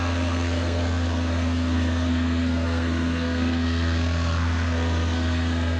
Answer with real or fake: fake